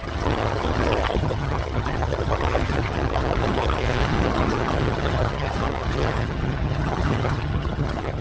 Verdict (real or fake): fake